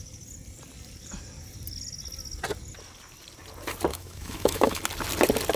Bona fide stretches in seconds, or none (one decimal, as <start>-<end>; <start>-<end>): 0.0-3.9; 4.8-5.6